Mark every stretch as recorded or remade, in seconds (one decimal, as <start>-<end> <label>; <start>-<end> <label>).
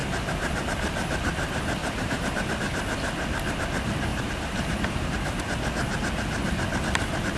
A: 0.0-0.6 remade; 0.6-1.8 recorded; 1.8-2.5 remade; 2.5-4.1 recorded; 4.1-5.4 remade; 5.4-7.4 recorded